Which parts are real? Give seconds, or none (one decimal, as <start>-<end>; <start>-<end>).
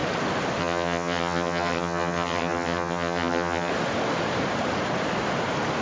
0.0-0.6; 3.7-5.8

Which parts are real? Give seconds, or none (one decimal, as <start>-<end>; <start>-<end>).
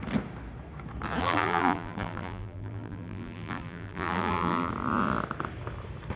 0.0-1.2; 4.7-6.2